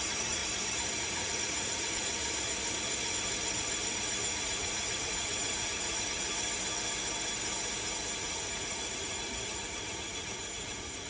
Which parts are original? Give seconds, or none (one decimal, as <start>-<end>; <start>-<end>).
0.4-1.0; 2.2-4.2; 6.3-8.2